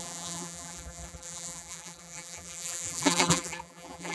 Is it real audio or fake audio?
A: fake